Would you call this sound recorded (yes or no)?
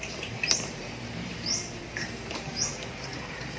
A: no